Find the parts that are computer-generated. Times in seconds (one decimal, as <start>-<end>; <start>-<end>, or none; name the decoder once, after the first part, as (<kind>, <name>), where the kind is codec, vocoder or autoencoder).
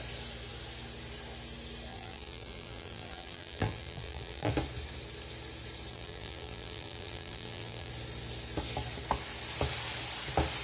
1.9-4.5 (vocoder, BigVGAN v2); 5.9-7.9